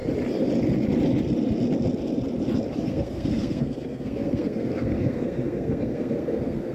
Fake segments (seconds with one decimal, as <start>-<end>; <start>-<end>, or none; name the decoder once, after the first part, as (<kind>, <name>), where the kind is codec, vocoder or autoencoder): 2.8-6.7 (codec, SNAC)